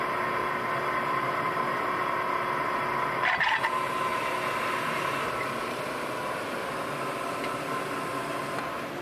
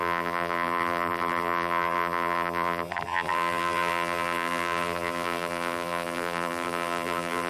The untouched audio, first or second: first